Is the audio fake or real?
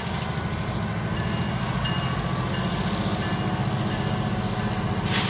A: real